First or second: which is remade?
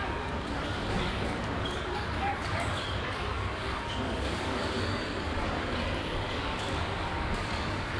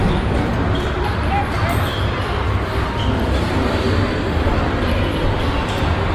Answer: first